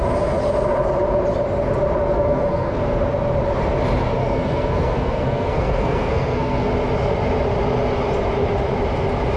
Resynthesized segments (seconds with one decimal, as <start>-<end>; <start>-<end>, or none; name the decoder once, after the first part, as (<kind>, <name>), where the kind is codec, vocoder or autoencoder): 2.0-3.0 (codec, SNAC); 4.2-6.7